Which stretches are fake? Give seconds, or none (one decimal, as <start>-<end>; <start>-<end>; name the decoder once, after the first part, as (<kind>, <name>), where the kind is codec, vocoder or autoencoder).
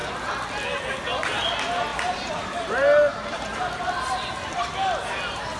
1.9-3.8 (vocoder, BigVGAN v2)